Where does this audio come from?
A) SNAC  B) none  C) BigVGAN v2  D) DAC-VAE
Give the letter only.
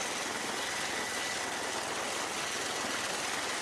B